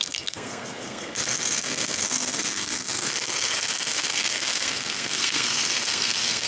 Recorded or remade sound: remade